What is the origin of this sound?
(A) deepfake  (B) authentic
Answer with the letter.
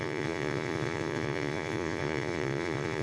A